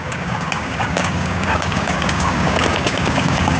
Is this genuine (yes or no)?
no